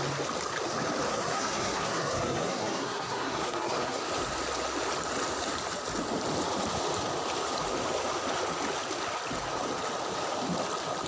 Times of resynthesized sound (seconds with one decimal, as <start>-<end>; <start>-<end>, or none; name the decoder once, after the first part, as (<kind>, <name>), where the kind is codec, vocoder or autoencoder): 1.1-4.0 (codec, SNAC)